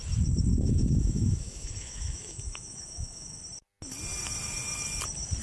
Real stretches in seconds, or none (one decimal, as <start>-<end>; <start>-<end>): 0.0-0.5; 3.4-5.4